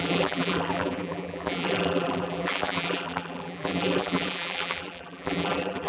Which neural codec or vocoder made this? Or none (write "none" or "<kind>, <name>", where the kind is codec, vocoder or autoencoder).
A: vocoder, BigVGAN v2